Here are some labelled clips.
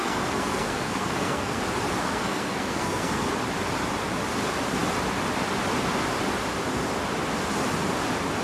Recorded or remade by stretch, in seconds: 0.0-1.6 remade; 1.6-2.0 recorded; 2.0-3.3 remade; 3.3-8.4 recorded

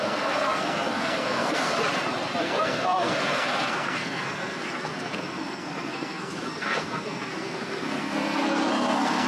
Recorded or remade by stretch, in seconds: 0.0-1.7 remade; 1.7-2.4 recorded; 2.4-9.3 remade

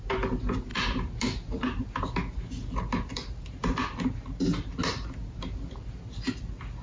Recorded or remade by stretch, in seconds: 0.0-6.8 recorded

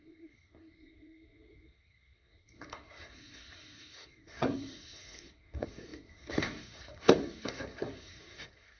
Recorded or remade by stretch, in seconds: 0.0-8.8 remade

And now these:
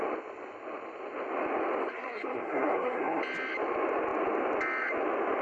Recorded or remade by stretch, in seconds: 0.0-1.9 recorded; 1.9-3.2 remade; 3.2-5.4 recorded